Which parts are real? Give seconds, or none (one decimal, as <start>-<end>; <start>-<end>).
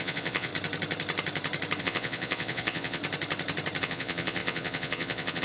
0.5-1.8; 3.0-3.8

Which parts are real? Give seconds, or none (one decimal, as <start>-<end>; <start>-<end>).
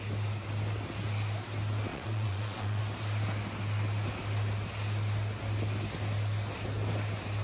0.0-1.9; 2.8-7.4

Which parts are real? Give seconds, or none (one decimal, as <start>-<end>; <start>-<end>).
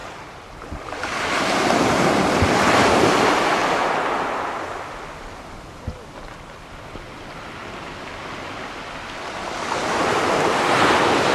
0.0-11.3